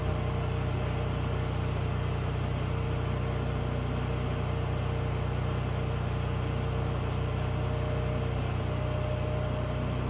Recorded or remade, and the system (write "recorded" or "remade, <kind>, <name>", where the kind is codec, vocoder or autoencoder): recorded